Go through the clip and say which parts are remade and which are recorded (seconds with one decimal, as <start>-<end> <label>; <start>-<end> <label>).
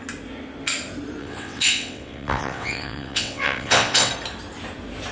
0.0-1.2 recorded; 1.2-4.1 remade; 4.1-5.1 recorded